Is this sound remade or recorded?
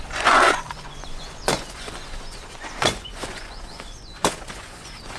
remade